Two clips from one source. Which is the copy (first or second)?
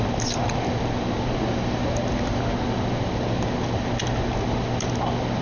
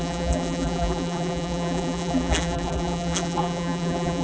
second